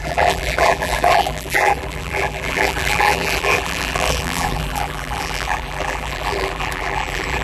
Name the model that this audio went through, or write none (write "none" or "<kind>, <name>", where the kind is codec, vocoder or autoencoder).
vocoder, BigVGAN v2